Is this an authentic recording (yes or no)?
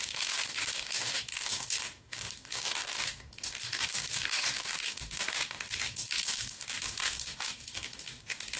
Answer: no